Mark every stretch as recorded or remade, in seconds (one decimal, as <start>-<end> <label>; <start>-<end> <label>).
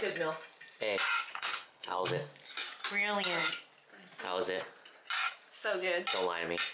0.0-1.3 recorded; 1.3-2.1 remade; 2.1-6.7 recorded